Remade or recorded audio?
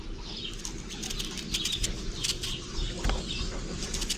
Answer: recorded